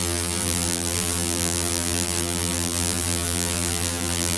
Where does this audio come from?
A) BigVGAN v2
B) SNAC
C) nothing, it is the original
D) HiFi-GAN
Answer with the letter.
A